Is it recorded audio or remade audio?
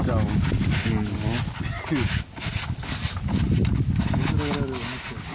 recorded